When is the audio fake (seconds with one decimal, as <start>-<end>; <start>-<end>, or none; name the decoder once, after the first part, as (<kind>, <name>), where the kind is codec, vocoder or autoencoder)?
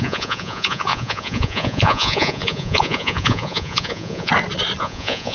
0.0-4.3 (vocoder, Vocos); 4.8-5.3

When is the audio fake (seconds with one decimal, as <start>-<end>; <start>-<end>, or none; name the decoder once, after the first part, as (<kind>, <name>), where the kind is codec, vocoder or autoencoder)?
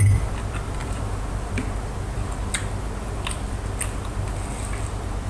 none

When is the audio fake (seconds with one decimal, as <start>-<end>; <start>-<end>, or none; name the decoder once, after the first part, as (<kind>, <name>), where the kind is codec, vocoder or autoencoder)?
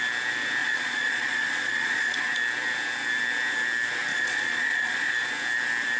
0.6-2.3 (vocoder, Vocos); 4.1-5.1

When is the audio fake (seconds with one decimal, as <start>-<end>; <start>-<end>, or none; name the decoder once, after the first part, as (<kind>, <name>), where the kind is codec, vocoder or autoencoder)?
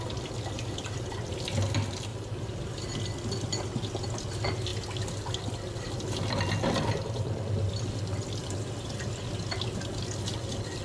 2.1-2.9 (vocoder, BigVGAN v2)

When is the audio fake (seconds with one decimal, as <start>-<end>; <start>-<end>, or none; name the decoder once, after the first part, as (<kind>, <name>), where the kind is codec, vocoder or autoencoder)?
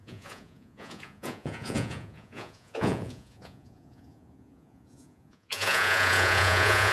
0.0-6.9 (vocoder, Vocos)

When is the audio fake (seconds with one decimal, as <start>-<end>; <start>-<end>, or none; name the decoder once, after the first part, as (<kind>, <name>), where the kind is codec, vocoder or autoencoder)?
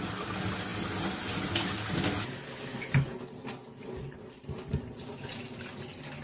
none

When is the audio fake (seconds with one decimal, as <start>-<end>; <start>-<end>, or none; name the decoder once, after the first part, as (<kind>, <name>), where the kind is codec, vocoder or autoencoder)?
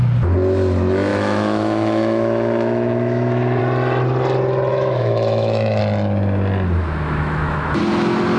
1.1-3.6 (autoencoder, DAC-VAE); 4.7-5.8; 6.8-7.8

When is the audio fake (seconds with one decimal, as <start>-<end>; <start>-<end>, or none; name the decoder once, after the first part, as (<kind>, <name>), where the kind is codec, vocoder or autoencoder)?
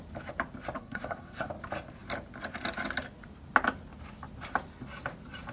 0.8-1.5 (codec, SNAC)